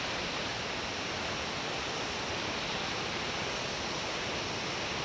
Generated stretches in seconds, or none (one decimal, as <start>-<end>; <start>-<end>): none